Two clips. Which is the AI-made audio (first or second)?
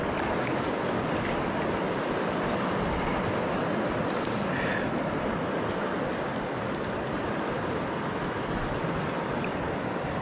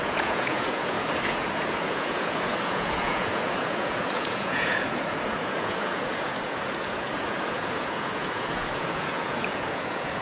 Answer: second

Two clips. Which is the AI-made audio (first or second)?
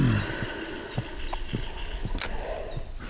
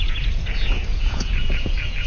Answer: second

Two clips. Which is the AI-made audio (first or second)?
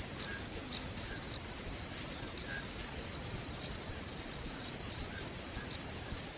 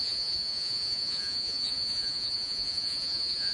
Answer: second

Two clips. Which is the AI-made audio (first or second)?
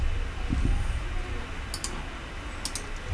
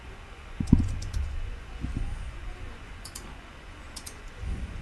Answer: second